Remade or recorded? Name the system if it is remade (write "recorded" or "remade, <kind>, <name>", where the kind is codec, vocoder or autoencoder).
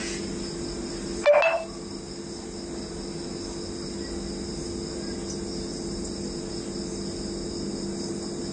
recorded